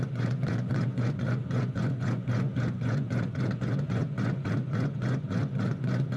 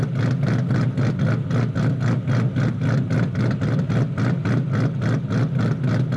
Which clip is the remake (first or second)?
first